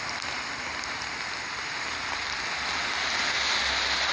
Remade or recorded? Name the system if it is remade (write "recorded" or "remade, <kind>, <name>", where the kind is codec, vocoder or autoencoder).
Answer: recorded